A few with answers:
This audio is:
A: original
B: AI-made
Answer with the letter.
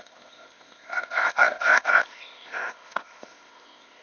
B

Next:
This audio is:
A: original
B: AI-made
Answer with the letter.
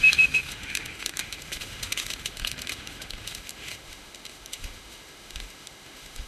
B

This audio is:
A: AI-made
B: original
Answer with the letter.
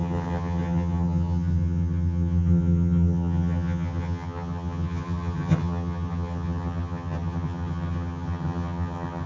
A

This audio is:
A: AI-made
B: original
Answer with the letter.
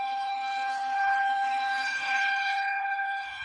A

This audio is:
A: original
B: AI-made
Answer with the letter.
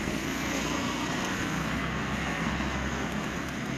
B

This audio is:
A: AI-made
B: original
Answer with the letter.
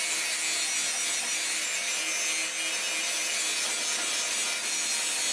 B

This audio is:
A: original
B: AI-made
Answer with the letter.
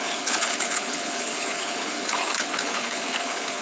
B